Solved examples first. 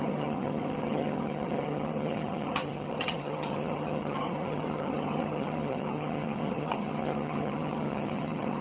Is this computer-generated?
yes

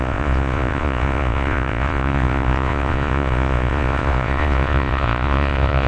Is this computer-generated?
yes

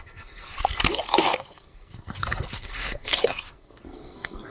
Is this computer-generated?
yes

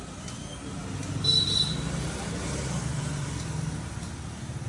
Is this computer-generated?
no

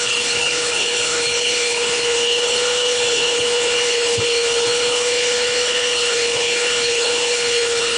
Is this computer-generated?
yes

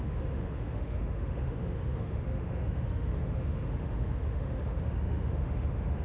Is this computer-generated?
yes